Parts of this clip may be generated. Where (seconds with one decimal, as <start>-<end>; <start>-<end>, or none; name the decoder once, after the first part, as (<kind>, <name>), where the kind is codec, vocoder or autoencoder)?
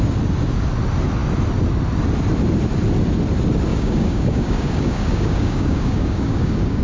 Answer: 3.7-6.8 (codec, DAC)